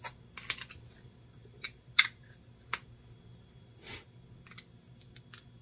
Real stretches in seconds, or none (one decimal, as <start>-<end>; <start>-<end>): 0.0-5.6